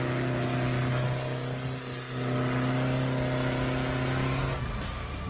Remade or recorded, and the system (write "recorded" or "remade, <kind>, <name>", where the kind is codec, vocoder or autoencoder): recorded